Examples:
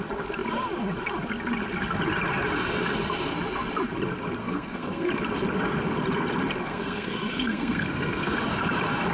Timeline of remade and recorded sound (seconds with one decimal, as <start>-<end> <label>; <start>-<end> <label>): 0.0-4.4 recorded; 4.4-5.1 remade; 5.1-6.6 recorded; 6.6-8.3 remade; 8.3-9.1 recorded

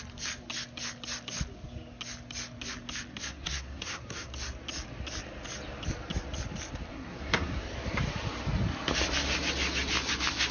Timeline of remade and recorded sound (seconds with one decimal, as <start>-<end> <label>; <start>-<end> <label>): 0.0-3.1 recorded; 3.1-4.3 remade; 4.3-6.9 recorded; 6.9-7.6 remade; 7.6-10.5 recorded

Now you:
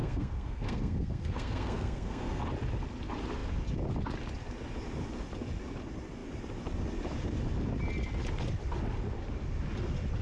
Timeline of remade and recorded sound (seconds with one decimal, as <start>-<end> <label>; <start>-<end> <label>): 0.0-2.4 remade; 2.4-10.2 recorded

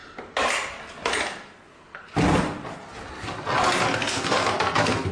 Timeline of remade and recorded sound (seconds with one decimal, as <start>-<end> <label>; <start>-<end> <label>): 0.0-4.0 recorded; 4.0-5.1 remade

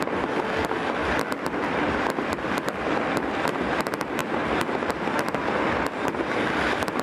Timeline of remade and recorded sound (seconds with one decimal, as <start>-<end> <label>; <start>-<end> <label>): 0.0-7.0 recorded

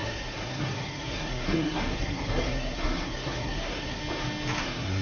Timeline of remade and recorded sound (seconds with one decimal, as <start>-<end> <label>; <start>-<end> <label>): 0.0-4.0 remade; 4.0-4.6 recorded; 4.6-5.0 remade

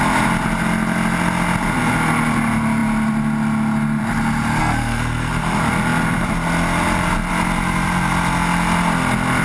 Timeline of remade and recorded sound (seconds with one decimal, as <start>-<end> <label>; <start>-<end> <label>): 0.0-4.6 recorded; 4.6-5.3 remade; 5.3-9.4 recorded